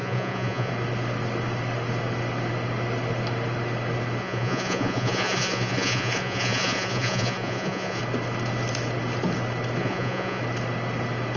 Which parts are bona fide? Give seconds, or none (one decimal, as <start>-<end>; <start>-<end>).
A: 0.7-4.2; 8.0-9.8; 10.4-11.4